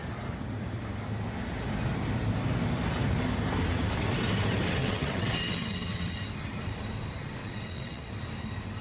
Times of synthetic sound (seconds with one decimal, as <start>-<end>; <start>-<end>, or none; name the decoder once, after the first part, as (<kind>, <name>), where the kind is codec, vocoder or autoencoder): 4.8-6.2 (vocoder, WaveNeXt); 7.4-8.0